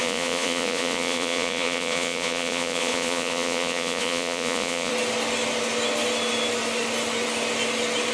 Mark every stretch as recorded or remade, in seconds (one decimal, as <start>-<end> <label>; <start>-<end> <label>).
0.0-4.9 remade; 4.9-8.1 recorded